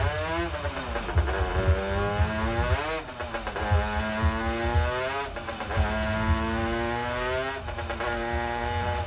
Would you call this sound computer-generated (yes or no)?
no